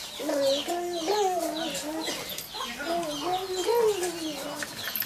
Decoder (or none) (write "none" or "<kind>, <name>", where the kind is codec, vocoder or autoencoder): none